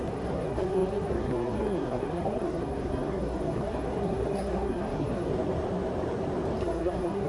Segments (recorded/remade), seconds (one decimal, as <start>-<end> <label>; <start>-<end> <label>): 0.0-5.3 remade; 5.3-6.6 recorded; 6.6-7.3 remade